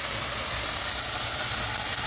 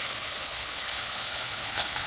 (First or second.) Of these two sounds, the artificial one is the second